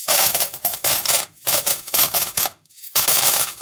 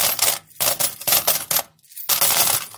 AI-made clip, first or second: first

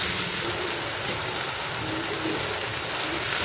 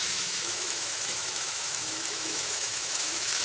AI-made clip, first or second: second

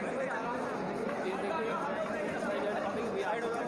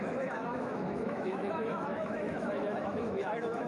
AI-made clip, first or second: second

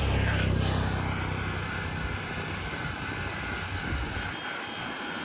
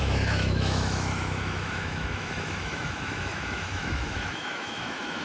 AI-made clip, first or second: second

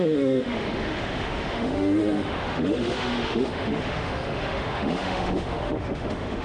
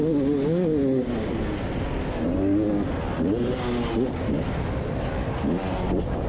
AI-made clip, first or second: first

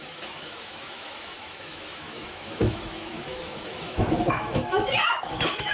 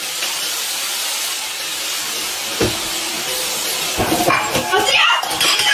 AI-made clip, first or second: first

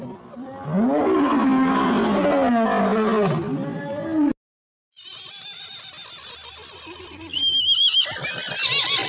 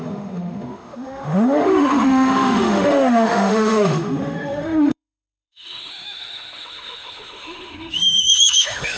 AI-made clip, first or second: second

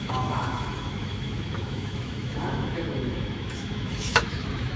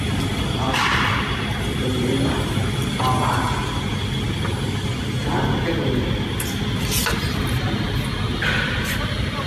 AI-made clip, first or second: first